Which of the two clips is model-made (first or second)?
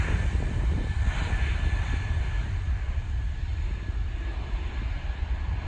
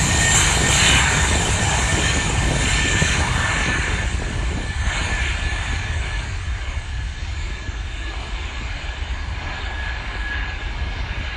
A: second